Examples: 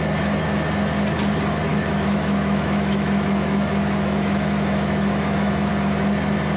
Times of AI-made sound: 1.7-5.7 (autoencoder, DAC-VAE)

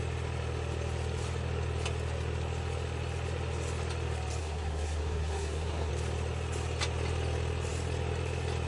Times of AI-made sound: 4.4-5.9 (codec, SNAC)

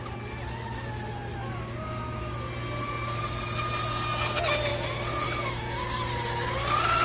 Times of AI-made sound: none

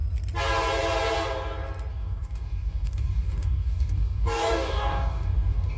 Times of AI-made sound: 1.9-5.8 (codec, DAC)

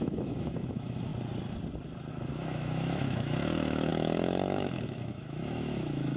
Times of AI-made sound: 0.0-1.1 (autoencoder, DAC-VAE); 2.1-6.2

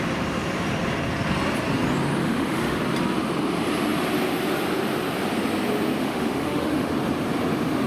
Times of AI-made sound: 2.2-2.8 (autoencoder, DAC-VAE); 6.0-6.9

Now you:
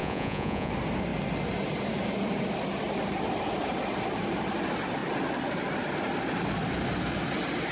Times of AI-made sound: 0.0-0.7 (vocoder, Vocos)

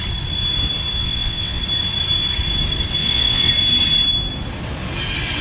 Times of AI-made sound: 1.0-1.6 (vocoder, WaveNeXt); 3.0-3.5